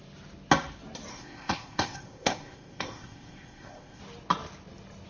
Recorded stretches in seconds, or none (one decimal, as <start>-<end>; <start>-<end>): 0.0-1.1; 4.0-5.1